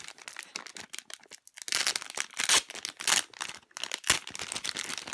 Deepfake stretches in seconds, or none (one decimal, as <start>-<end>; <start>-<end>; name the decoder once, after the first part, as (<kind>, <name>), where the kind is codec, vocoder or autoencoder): none

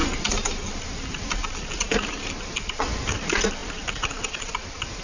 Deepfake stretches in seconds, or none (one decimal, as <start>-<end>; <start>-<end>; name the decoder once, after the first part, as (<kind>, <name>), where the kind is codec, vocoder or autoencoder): none

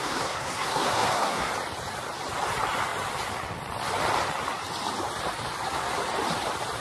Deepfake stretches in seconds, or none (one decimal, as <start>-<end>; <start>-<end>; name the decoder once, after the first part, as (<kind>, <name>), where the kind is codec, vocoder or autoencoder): 0.0-1.5 (codec, SNAC)